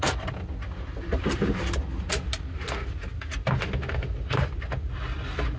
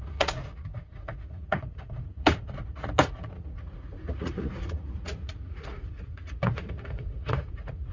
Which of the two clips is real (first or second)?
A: first